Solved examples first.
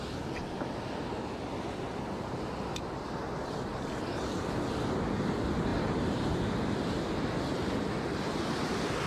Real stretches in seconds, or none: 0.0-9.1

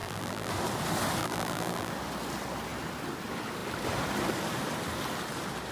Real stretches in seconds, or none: 0.5-1.2; 1.9-5.7

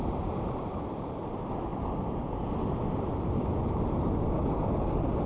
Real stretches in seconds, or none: 0.0-5.3

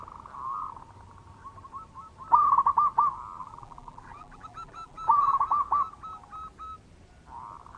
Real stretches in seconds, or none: 0.0-3.4; 5.4-7.8

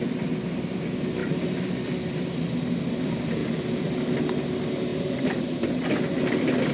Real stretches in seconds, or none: 0.0-1.2; 1.7-4.9; 5.7-6.7

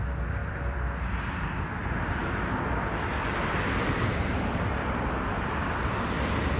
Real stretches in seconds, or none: 0.0-0.4; 1.6-2.2; 5.7-6.6

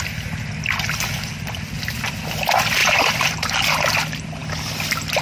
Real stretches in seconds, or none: 0.0-2.8; 3.7-5.2

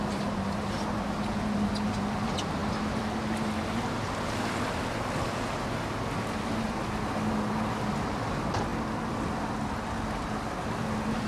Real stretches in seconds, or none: 0.0-11.3